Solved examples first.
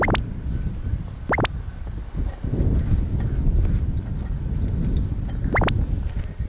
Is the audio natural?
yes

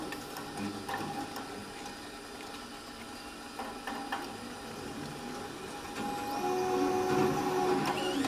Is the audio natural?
yes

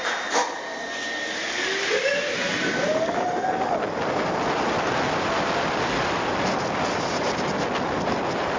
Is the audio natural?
yes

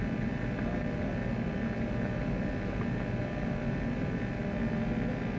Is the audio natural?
yes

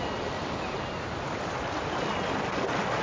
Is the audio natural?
yes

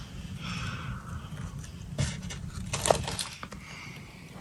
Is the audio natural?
yes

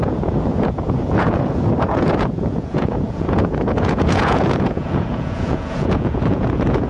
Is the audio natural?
no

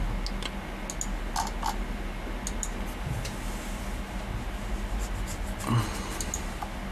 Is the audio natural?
yes